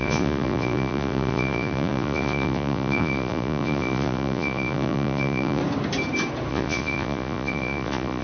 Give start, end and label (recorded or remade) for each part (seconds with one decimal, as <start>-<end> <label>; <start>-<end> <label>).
0.0-5.6 remade; 5.6-6.5 recorded; 6.5-8.2 remade